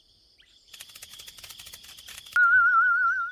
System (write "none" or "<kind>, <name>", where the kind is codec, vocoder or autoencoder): none